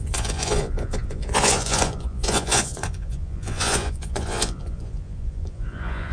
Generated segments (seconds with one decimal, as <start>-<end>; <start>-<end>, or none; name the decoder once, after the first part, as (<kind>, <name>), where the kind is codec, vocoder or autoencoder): 0.0-6.1 (vocoder, Vocos)